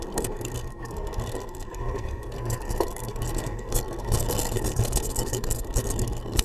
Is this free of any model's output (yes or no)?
no